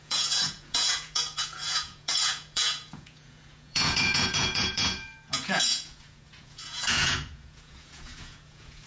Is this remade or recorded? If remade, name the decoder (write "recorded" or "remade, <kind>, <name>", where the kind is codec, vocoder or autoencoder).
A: remade, vocoder, Vocos